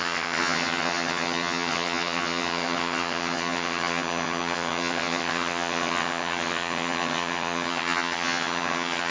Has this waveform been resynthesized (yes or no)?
yes